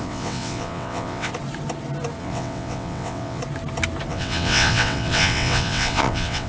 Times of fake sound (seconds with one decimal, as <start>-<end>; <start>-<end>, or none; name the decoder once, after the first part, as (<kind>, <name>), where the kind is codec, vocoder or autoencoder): 0.0-1.3 (vocoder, WaveNeXt); 2.2-3.4; 4.1-6.5